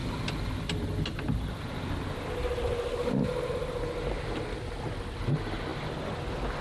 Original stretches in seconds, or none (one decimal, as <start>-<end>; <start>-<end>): 0.0-6.6